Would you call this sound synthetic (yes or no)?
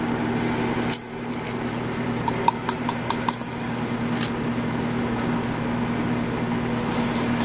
no